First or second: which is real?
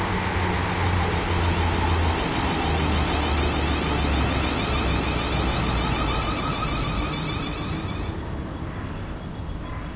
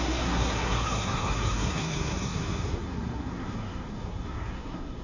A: first